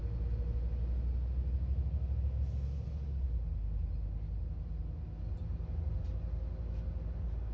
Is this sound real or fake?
real